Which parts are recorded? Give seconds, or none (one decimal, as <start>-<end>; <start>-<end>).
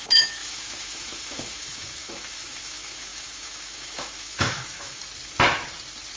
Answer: 5.0-6.2